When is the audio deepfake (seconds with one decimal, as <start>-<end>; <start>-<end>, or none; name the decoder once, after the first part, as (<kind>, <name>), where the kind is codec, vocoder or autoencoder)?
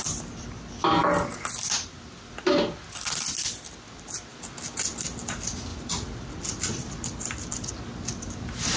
4.3-5.0 (vocoder, BigVGAN v2); 5.7-7.7